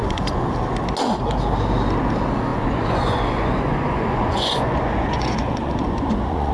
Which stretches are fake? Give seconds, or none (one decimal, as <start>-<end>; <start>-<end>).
0.0-0.5; 2.5-6.5